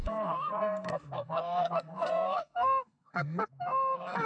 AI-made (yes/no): yes